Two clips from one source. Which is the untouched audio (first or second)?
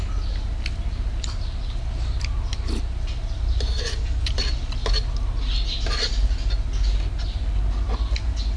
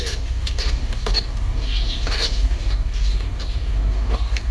first